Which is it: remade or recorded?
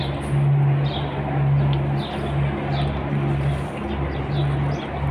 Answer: recorded